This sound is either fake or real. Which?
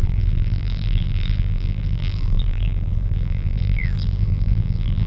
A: fake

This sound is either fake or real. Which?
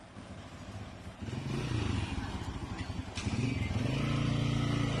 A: real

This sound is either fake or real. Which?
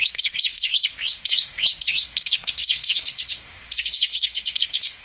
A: fake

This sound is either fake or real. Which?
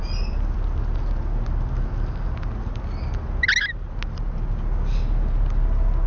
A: real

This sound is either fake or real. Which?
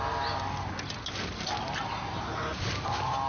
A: real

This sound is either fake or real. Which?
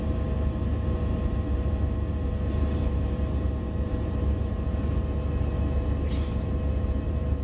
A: fake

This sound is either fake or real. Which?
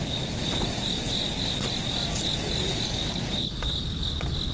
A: real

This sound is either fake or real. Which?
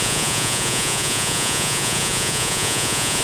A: fake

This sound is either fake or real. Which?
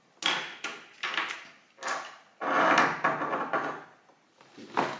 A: real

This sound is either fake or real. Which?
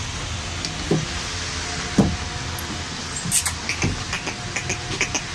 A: real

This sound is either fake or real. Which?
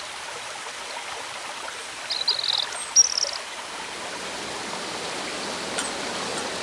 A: real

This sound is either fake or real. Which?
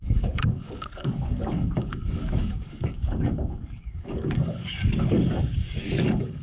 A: fake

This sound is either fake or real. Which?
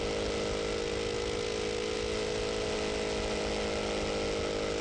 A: real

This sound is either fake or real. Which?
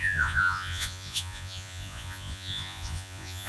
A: fake